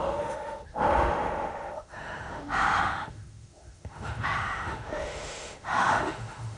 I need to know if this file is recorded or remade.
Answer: remade